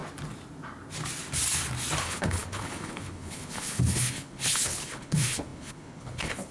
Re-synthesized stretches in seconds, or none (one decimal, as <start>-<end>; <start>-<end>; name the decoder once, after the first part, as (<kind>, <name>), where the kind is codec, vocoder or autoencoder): 2.0-6.5 (codec, HILCodec)

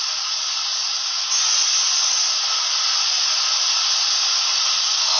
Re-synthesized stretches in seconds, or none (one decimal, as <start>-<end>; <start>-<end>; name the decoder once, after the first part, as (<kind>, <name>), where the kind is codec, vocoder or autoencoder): none

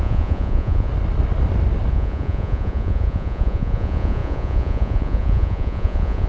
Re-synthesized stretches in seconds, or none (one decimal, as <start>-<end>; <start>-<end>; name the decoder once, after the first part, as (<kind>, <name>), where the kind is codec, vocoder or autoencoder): 0.0-0.9 (vocoder, Vocos); 1.9-6.3

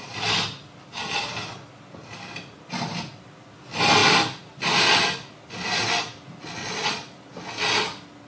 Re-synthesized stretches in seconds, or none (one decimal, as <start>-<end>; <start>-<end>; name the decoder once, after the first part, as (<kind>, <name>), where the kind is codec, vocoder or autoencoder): 6.6-7.3 (vocoder, Vocos)

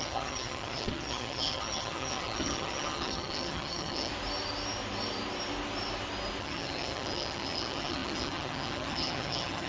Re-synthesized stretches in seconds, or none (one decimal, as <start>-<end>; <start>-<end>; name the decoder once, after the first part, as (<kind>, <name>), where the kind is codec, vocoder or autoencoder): 0.0-4.1 (vocoder, HiFi-GAN); 6.4-9.7

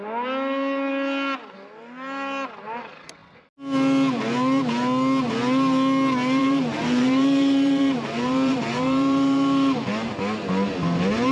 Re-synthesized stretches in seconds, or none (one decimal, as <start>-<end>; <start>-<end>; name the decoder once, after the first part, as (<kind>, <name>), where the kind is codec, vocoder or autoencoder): 6.4-10.2 (vocoder, BigVGAN v2)